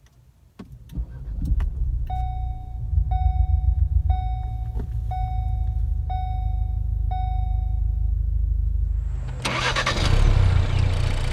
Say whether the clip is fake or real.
real